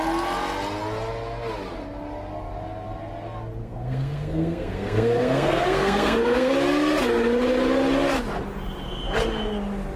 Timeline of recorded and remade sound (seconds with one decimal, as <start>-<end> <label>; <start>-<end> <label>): 0.0-3.6 recorded; 3.6-6.5 remade; 6.5-10.0 recorded